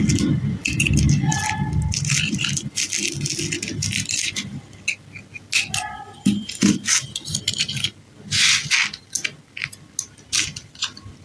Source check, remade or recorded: recorded